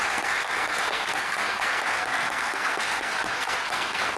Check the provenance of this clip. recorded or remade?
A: remade